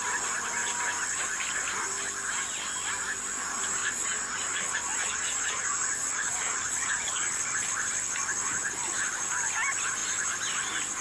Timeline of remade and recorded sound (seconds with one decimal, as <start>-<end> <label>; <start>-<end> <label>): 0.0-3.8 recorded; 3.8-7.7 remade; 7.7-11.0 recorded